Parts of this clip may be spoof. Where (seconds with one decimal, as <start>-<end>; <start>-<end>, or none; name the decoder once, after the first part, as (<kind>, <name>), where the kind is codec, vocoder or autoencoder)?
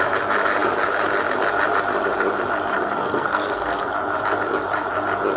2.7-3.9 (codec, SNAC)